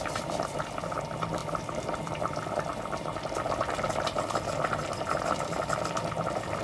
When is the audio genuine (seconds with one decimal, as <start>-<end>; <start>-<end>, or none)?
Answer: 1.4-5.4

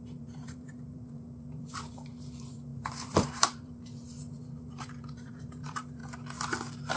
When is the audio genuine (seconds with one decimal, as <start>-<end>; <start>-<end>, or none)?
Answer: 6.0-7.0